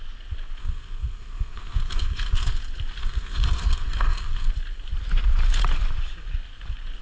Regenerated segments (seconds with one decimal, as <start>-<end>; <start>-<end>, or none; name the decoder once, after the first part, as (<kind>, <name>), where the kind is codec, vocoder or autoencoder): 0.6-2.6 (codec, SNAC); 3.0-4.5